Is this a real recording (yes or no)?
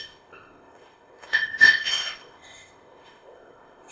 no